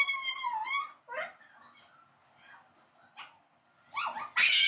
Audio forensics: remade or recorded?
recorded